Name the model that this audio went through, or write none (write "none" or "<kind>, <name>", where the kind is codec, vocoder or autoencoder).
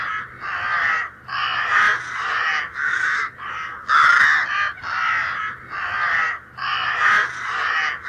none